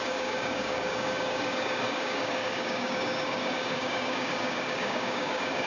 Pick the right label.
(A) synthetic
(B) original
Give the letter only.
A